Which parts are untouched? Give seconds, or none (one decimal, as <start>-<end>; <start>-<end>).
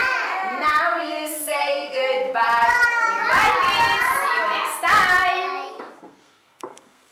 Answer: 0.0-1.0; 2.0-5.7